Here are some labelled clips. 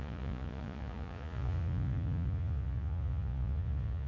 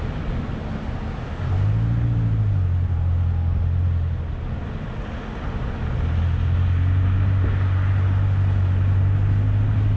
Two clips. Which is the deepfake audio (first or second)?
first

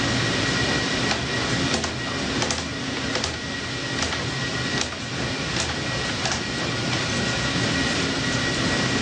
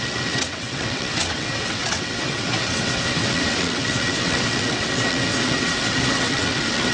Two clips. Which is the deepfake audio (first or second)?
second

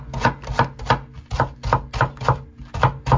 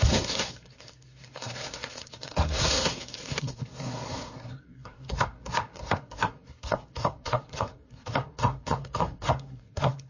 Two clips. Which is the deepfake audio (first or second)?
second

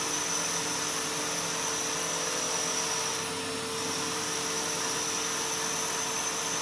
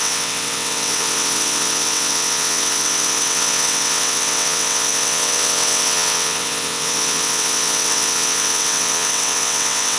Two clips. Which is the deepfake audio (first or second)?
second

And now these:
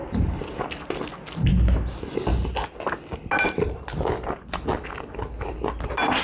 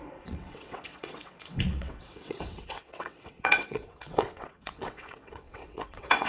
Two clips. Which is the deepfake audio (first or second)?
second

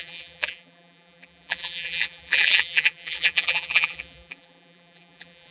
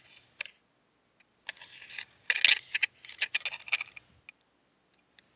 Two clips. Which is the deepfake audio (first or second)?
first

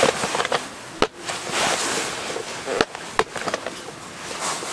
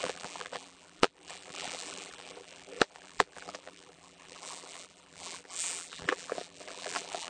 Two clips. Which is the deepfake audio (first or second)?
second